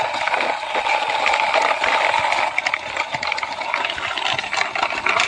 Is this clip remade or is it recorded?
recorded